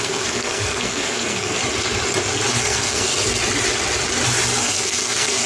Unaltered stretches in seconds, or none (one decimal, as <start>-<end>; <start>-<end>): 1.6-2.6; 3.1-4.6

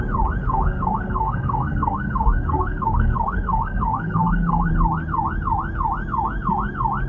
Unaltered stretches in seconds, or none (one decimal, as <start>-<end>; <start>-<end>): 0.0-0.4; 4.7-7.1

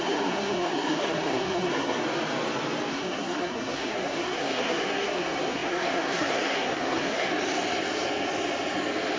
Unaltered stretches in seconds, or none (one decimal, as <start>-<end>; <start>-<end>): 2.0-2.9; 7.3-9.2

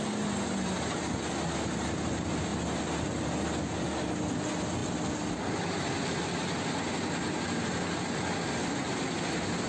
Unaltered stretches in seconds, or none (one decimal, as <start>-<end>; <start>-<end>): 0.0-9.7